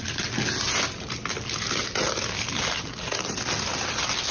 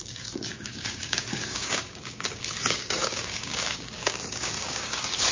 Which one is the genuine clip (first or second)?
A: first